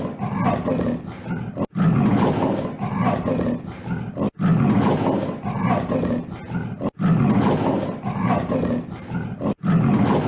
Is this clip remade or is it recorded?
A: recorded